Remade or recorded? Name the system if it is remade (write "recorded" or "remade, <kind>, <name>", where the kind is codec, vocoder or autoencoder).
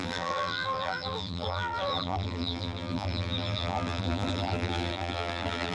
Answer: remade, vocoder, BigVGAN v2